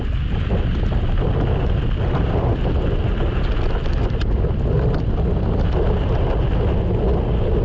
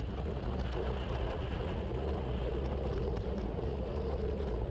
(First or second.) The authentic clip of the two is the first